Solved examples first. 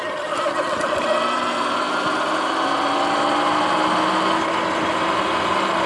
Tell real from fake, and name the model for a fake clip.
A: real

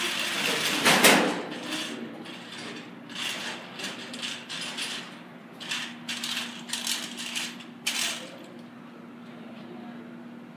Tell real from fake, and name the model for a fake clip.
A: real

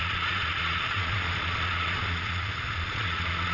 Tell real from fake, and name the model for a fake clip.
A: fake, vocoder, Vocos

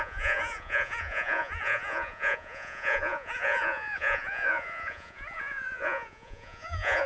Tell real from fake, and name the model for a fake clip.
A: fake, vocoder, Vocos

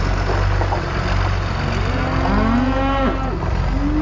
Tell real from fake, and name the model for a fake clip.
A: real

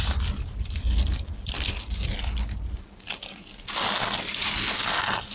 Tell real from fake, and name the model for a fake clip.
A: real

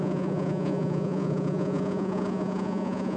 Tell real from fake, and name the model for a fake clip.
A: fake, vocoder, Vocos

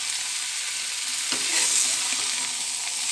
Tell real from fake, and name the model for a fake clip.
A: real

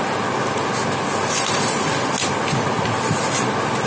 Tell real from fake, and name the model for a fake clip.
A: real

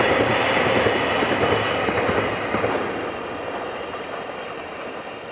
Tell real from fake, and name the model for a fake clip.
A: real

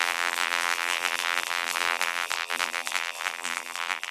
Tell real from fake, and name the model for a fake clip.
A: fake, vocoder, BigVGAN v2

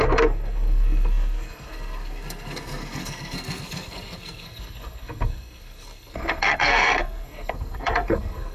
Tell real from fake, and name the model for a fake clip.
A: fake, codec, SNAC